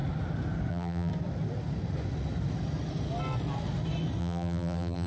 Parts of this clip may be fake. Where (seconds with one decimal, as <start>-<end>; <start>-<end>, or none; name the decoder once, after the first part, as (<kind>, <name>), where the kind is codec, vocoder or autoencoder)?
0.7-1.1 (vocoder, BigVGAN v2); 4.2-5.1